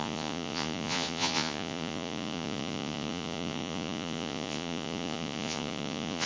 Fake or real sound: fake